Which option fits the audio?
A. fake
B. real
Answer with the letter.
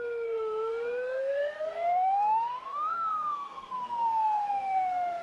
A